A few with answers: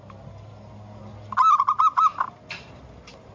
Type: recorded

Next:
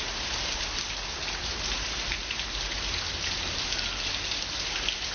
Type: recorded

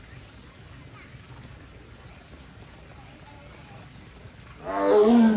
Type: recorded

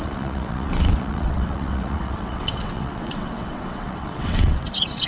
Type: remade